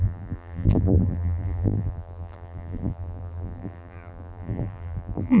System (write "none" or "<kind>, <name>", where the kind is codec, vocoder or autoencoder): vocoder, BigVGAN v2